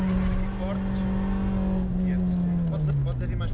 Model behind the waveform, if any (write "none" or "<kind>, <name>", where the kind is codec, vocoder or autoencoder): none